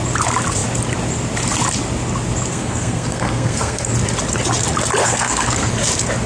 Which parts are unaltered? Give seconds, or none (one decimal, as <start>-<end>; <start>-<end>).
0.0-2.5; 3.9-5.0; 5.7-6.3